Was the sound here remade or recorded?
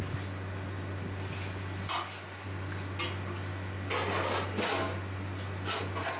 recorded